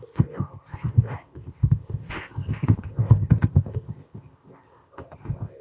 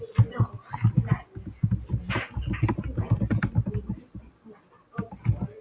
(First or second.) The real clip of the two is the second